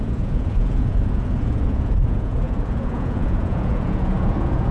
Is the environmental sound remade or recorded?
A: remade